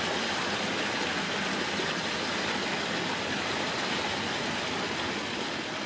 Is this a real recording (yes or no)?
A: yes